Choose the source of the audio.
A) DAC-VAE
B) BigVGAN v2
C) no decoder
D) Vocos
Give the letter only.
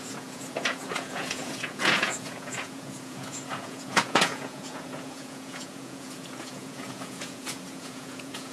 D